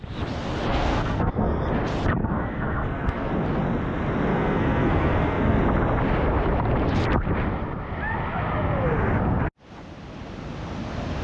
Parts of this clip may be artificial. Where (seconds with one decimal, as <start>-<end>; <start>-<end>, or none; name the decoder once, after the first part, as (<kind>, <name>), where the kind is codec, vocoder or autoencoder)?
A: 0.7-1.6 (codec, SNAC); 2.2-3.3; 4.3-5.6